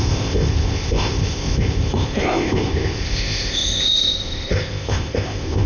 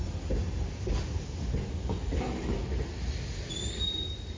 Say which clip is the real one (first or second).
second